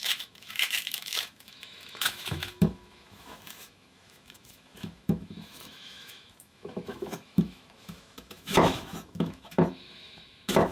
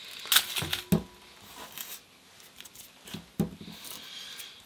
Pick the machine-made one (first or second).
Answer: first